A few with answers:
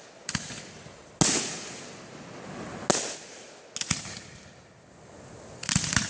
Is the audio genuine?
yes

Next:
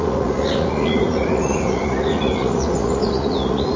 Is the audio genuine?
no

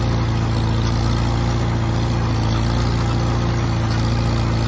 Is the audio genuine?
yes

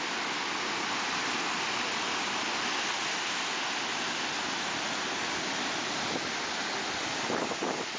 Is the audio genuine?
yes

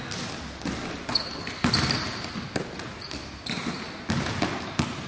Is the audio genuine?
yes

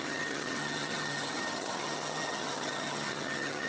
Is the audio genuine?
no